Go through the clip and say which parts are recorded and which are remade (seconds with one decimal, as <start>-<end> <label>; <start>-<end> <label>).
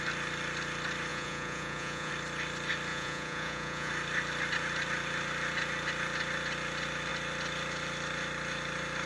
0.0-1.1 recorded; 1.1-2.1 remade; 2.1-2.9 recorded; 2.9-3.9 remade; 3.9-9.1 recorded